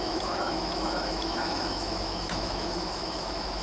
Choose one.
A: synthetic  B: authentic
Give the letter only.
A